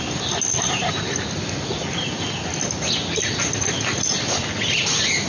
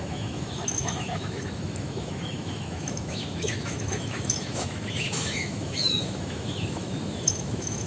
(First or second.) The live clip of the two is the first